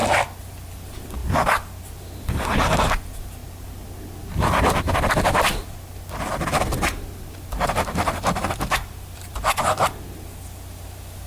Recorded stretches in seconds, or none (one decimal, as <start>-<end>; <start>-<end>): 1.2-2.2; 3.4-7.7